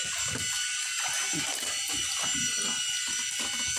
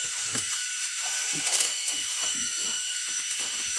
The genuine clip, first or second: first